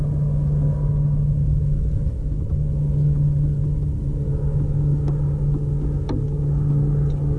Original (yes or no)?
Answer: yes